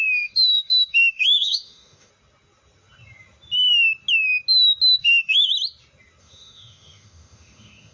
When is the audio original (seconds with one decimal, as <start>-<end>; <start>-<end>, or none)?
2.1-5.0; 5.5-6.2